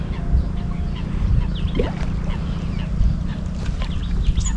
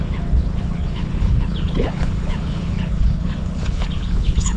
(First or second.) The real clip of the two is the first